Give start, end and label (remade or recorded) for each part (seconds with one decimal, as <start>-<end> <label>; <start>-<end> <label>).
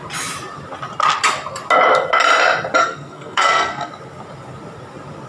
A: 0.0-2.8 recorded; 2.8-3.9 remade; 3.9-5.3 recorded